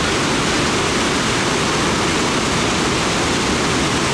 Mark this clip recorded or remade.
recorded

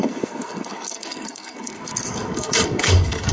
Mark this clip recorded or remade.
remade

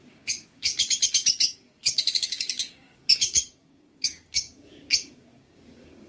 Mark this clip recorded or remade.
remade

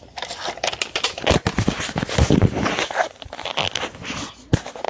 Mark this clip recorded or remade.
recorded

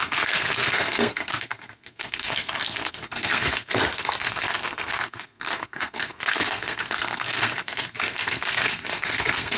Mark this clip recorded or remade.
remade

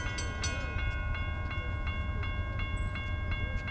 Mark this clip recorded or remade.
recorded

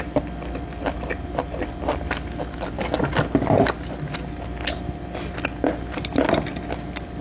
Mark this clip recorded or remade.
recorded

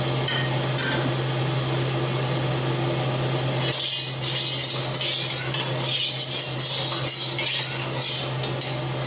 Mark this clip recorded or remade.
recorded